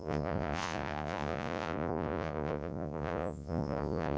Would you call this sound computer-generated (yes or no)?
yes